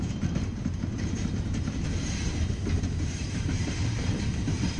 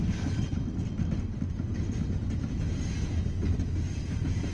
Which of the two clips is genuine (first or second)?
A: second